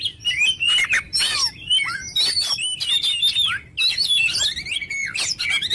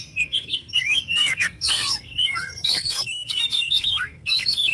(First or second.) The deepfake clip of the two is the second